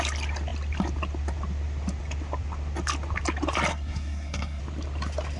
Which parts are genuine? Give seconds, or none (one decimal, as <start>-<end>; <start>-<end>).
0.0-3.7; 4.6-5.4